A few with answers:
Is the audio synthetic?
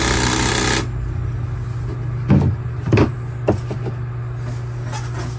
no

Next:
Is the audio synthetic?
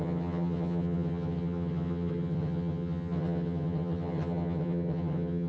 yes